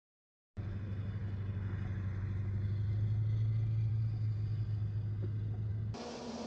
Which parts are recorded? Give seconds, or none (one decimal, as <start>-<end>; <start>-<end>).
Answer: 0.0-6.5